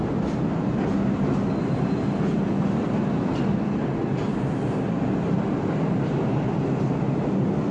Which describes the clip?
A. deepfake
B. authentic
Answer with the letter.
B